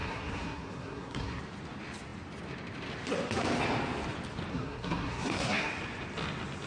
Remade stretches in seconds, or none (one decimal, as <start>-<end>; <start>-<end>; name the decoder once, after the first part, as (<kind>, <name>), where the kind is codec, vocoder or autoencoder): 0.0-1.4 (codec, SNAC); 4.5-5.7